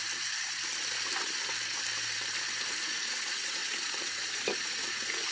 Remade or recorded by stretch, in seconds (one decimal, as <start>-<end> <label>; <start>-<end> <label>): 0.0-2.7 recorded; 2.7-5.3 remade